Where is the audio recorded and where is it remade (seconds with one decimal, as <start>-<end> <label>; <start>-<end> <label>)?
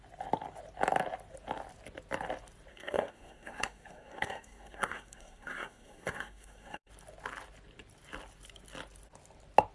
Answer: 0.0-2.7 recorded; 2.7-6.9 remade; 6.9-9.7 recorded